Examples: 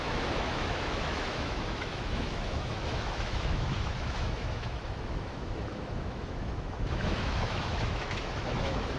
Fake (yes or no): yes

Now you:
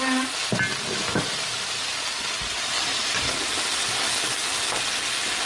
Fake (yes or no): no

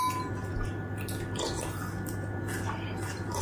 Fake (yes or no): no